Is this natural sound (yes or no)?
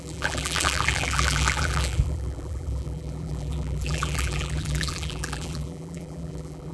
no